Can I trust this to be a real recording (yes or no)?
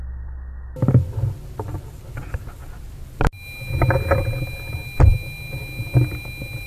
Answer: yes